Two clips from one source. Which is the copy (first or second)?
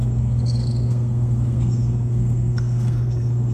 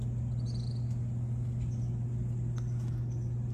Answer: first